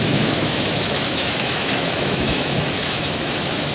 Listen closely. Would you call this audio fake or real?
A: fake